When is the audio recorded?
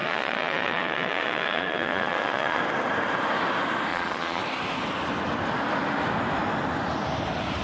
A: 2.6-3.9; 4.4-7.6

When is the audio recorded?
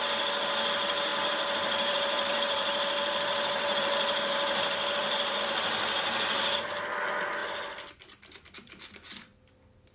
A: 0.0-1.1; 5.4-9.9